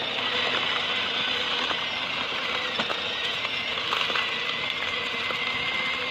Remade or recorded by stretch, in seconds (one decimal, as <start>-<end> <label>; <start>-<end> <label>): 0.0-2.9 recorded; 2.9-3.8 remade; 3.8-6.1 recorded